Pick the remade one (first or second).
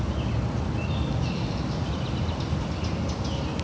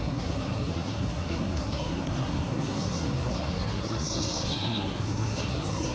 second